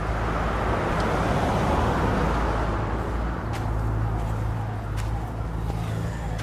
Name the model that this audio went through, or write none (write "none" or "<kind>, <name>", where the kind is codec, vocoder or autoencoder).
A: none